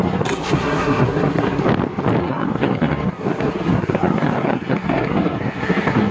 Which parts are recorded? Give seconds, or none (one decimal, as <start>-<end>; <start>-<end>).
1.6-2.2